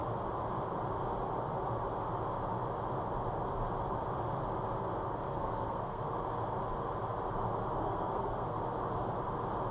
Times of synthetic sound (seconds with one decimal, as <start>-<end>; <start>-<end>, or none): 5.3-6.1; 7.8-8.6

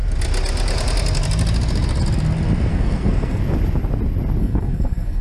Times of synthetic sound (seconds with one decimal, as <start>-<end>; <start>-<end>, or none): 2.7-3.4; 4.4-5.2

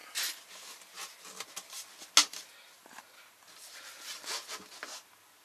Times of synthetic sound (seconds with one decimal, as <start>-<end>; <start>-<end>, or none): none

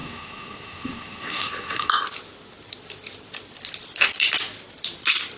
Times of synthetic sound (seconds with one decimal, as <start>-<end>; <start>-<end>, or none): 0.0-1.9

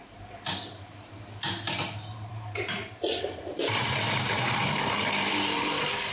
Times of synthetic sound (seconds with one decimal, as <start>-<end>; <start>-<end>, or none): 0.0-6.1